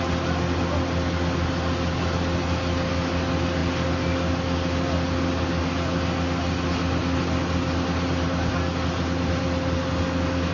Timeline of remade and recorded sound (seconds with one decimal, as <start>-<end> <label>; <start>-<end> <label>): 0.0-10.5 recorded